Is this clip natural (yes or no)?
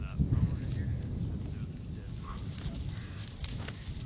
yes